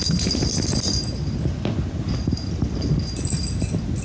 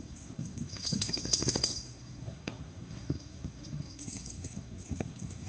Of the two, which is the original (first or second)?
first